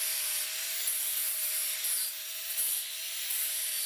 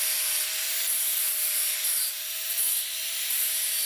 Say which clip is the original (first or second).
first